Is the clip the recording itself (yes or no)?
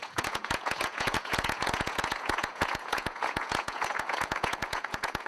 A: no